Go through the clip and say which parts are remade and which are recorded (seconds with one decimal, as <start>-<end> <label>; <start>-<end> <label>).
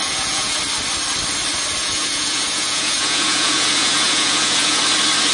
0.0-0.6 remade; 0.6-1.8 recorded; 1.8-4.8 remade; 4.8-5.3 recorded